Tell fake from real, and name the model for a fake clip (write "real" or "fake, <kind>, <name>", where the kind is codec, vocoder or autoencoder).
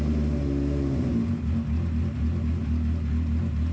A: real